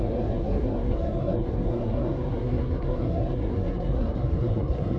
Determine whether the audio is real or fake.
fake